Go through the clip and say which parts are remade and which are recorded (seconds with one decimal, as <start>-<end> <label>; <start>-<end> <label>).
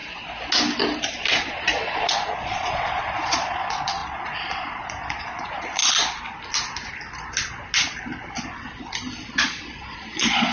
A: 0.0-1.3 recorded; 1.3-5.8 remade; 5.8-9.3 recorded; 9.3-10.5 remade